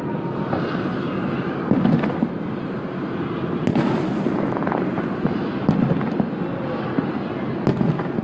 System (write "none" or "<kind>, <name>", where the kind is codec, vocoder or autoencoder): none